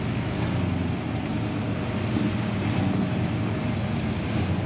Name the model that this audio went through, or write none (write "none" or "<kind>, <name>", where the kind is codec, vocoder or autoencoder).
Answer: none